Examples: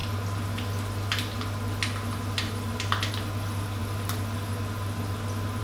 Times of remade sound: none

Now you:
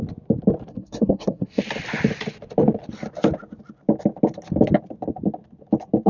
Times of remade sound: 0.7-1.6 (codec, SNAC)

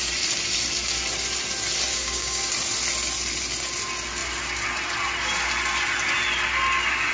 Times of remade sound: 1.9-2.5 (codec, DAC)

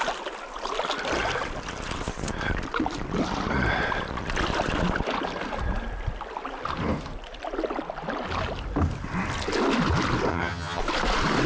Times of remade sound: 10.3-10.8 (vocoder, HiFi-GAN)

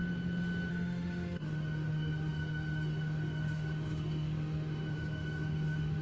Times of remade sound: 0.7-6.0 (autoencoder, DAC-VAE)

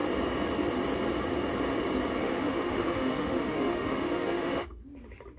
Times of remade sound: 2.2-4.8 (autoencoder, DAC-VAE)

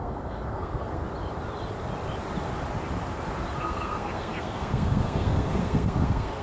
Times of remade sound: 0.0-1.0 (codec, SNAC); 3.6-6.4

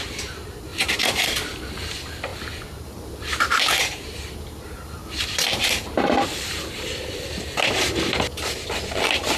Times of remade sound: 0.7-1.6 (vocoder, BigVGAN v2); 2.3-6.6